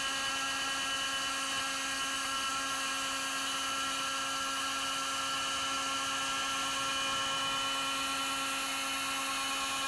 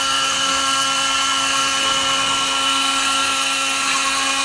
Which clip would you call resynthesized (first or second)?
second